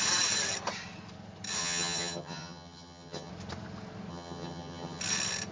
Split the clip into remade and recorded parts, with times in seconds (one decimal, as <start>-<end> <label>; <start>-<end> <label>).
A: 0.0-1.6 recorded; 1.6-3.3 remade; 3.3-4.1 recorded; 4.1-5.0 remade; 5.0-5.5 recorded